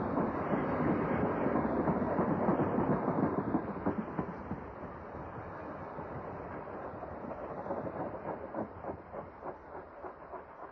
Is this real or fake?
real